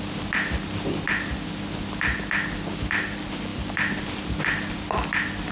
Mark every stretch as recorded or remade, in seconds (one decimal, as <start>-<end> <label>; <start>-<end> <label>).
0.0-5.5 recorded